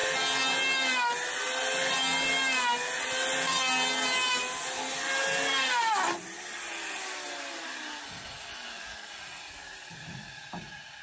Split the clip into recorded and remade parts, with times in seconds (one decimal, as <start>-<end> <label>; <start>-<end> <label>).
0.0-11.0 recorded